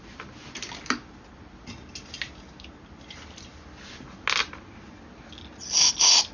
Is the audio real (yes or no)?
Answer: yes